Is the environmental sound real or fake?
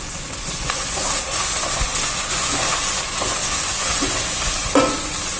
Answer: fake